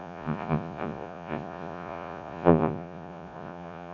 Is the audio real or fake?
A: fake